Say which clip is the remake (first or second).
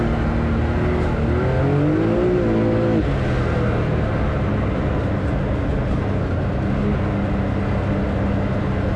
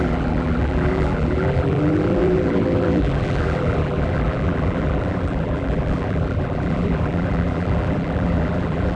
second